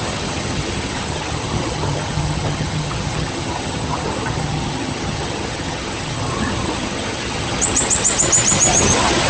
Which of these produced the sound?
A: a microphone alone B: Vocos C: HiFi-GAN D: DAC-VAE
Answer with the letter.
C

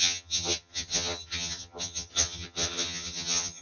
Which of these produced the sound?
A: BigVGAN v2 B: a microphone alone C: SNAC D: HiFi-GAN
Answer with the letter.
D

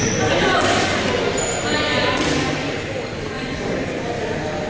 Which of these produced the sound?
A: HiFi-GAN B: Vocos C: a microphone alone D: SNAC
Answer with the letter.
C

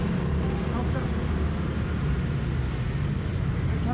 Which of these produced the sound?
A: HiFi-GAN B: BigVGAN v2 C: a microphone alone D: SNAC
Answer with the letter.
C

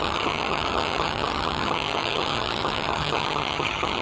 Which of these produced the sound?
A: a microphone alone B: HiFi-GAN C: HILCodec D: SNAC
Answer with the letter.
B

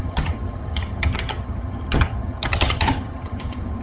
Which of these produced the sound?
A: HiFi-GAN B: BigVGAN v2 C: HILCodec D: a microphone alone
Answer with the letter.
A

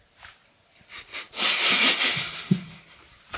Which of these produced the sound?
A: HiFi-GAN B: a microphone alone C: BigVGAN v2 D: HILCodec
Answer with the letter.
B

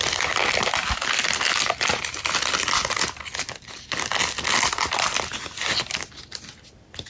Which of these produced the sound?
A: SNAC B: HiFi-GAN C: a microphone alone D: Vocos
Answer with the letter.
C